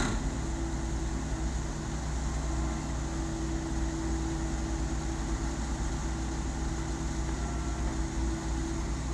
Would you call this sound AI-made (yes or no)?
no